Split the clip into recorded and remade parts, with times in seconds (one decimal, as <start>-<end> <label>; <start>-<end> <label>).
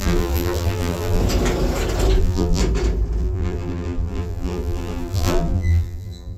0.0-1.2 remade; 1.2-2.2 recorded; 2.2-2.6 remade; 2.6-3.2 recorded; 3.2-6.4 remade